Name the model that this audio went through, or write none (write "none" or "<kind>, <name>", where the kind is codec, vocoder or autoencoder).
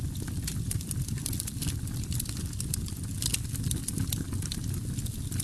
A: none